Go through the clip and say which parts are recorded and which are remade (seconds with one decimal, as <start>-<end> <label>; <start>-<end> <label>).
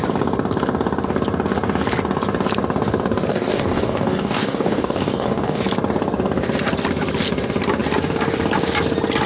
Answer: 0.0-3.3 recorded; 3.3-5.6 remade; 5.6-9.3 recorded